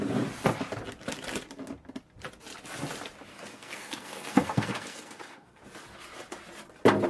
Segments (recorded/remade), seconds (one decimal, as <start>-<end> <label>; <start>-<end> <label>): 0.0-3.3 recorded; 3.3-5.6 remade; 5.6-7.1 recorded